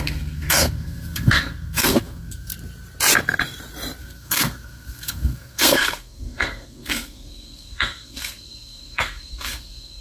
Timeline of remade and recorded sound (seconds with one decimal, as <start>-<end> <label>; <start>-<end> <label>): 0.0-2.5 remade; 2.5-4.0 recorded; 4.0-10.0 remade